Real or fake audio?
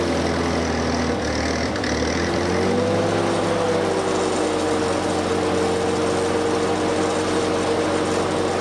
real